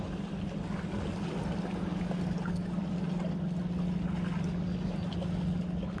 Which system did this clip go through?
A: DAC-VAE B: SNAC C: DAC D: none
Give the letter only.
D